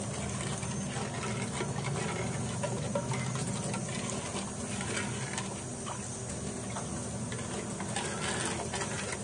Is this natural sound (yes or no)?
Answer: yes